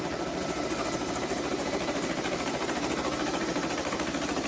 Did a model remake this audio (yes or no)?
yes